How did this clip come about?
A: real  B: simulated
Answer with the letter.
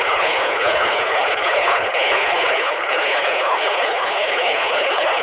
B